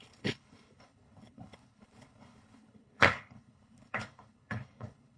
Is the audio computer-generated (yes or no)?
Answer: yes